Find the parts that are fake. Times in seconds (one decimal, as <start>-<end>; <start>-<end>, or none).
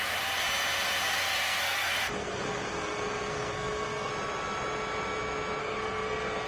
1.2-4.1; 5.6-6.5